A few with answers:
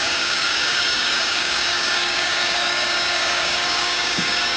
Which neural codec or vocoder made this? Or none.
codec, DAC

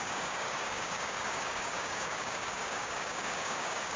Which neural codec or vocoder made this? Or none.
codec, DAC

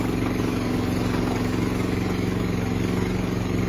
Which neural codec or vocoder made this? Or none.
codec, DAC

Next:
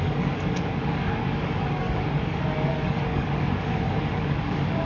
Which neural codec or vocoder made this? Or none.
codec, DAC